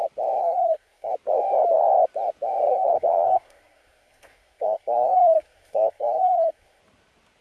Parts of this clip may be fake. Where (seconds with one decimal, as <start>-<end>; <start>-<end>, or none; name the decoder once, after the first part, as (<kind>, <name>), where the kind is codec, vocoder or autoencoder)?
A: 0.4-1.1 (codec, SNAC); 2.6-6.8